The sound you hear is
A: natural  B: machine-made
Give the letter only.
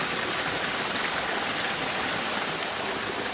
B